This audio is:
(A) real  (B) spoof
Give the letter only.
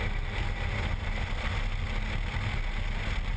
A